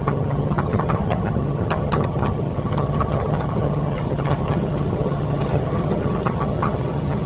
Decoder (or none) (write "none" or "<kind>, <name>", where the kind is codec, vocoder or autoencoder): vocoder, HiFi-GAN